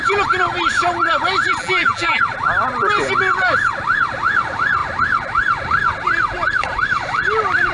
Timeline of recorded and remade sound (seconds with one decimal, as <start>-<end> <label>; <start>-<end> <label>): 0.0-1.6 recorded; 1.6-2.2 remade; 2.2-7.7 recorded